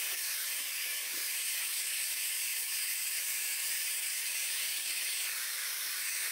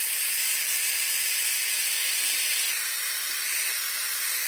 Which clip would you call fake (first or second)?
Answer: first